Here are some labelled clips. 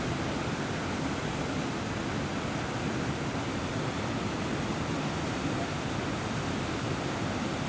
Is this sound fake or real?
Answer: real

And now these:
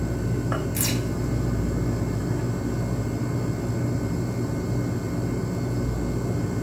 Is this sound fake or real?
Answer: real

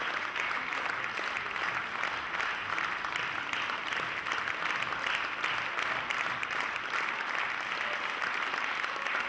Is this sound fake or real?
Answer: real